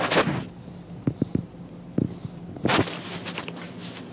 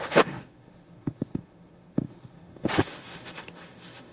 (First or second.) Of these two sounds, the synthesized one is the second